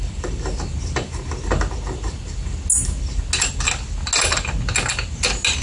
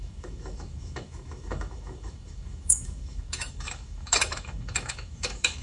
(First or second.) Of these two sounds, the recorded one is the first